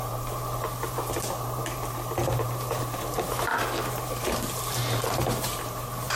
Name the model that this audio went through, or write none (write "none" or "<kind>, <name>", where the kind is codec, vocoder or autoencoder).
vocoder, BigVGAN v2